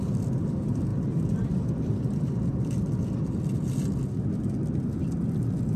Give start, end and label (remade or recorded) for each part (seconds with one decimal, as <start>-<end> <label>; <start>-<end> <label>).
0.0-5.8 recorded